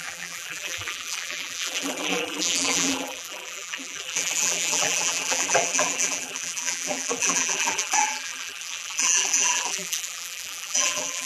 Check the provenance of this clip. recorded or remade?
remade